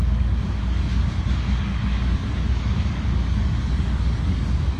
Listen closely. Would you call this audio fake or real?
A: fake